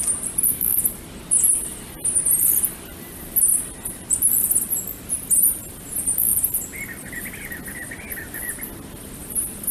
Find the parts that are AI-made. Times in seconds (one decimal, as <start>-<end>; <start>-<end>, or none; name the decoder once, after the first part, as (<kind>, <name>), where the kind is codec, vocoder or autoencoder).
none